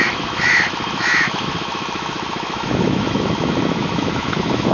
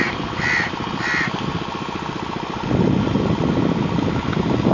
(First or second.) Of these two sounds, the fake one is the first